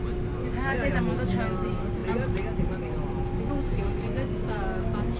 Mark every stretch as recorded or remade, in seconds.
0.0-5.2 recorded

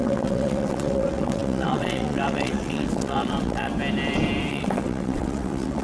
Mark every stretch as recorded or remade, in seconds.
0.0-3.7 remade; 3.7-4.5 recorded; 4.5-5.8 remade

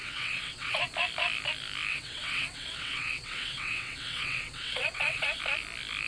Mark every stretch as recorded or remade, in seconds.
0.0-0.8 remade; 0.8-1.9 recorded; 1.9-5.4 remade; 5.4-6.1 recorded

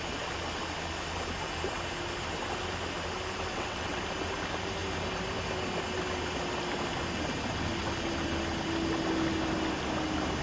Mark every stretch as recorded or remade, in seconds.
0.0-3.5 recorded; 3.5-4.0 remade; 4.0-10.4 recorded

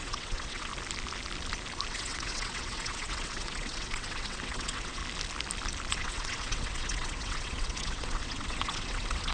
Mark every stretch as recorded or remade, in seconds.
0.0-0.7 remade; 0.7-1.9 recorded; 1.9-5.0 remade; 5.0-5.9 recorded; 5.9-9.3 remade